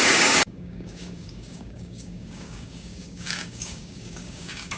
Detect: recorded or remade remade